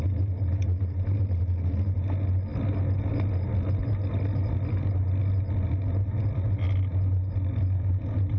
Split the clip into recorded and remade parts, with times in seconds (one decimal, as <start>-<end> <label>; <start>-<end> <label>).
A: 0.0-8.4 recorded